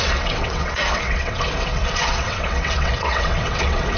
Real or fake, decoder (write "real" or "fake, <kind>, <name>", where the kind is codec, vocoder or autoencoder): fake, vocoder, WaveNeXt